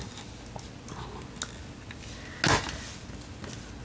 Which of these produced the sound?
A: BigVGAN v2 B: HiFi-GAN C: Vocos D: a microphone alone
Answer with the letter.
D